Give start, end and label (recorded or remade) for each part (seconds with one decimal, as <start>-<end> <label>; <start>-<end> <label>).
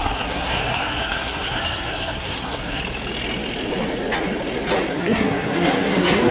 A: 0.0-2.8 remade; 2.8-4.9 recorded; 4.9-6.3 remade